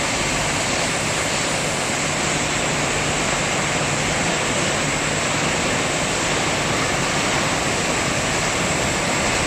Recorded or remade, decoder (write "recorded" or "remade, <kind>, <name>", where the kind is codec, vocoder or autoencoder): recorded